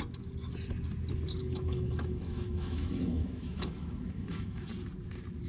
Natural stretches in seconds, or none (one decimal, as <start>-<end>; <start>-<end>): 0.0-1.4; 4.7-5.5